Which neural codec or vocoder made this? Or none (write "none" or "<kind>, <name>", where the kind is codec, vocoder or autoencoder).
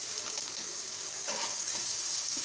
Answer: codec, DAC